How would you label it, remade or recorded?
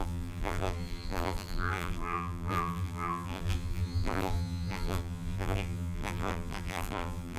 remade